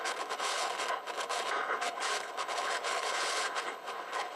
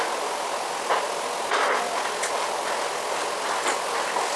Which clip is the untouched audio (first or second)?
second